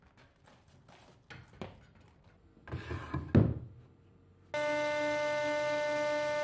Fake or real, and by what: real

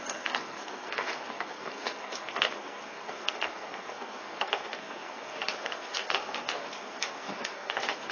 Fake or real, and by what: fake, codec, SNAC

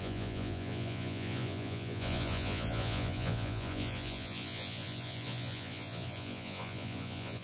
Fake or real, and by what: fake, vocoder, Vocos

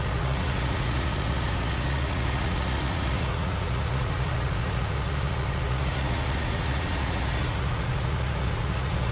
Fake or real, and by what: fake, vocoder, Vocos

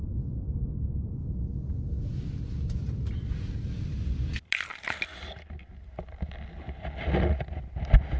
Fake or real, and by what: real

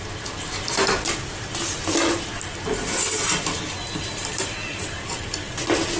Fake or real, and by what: real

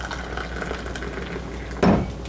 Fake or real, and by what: real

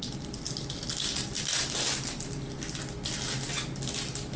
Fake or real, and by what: real